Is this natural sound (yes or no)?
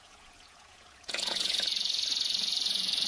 no